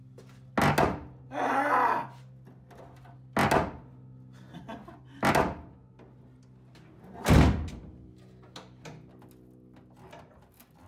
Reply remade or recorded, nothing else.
recorded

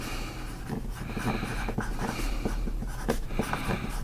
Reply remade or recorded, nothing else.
remade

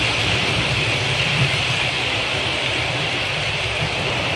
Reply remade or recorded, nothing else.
remade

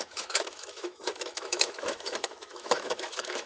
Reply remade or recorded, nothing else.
remade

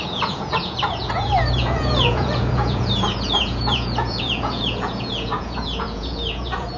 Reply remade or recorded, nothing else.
remade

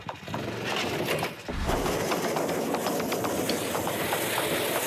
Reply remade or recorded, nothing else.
recorded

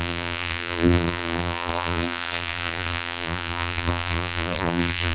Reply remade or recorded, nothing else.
remade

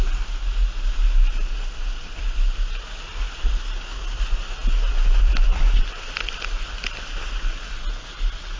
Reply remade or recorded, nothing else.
recorded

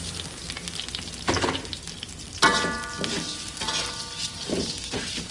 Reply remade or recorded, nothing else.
recorded